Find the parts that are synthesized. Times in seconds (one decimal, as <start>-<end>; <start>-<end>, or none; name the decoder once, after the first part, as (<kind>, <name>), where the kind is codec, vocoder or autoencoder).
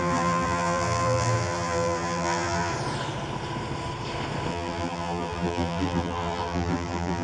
0.0-2.7 (vocoder, BigVGAN v2); 4.5-7.2